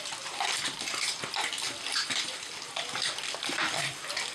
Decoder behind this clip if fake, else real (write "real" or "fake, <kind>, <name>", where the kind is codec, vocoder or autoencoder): fake, vocoder, BigVGAN v2